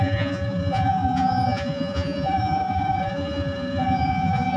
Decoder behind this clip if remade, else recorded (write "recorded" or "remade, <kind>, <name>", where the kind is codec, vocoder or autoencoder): remade, vocoder, Vocos